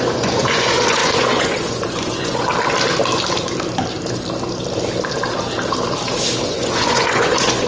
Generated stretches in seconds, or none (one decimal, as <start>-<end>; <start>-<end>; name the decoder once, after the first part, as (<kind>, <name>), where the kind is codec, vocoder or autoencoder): 0.0-2.5 (vocoder, Vocos); 6.4-7.7